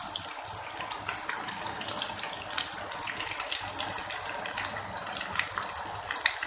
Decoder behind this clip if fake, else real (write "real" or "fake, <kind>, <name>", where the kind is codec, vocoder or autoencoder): real